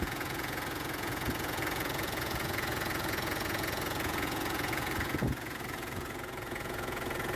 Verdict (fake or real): fake